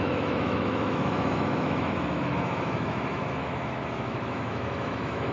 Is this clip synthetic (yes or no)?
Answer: yes